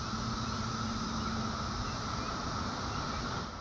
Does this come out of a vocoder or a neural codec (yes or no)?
no